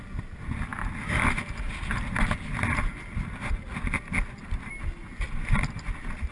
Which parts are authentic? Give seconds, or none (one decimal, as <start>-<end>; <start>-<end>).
0.0-6.3